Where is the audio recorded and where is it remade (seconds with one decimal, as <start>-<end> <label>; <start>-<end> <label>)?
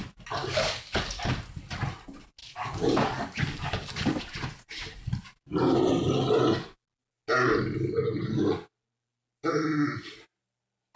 0.0-0.4 recorded; 0.4-1.2 remade; 1.2-2.4 recorded; 2.4-4.2 remade; 4.2-11.0 recorded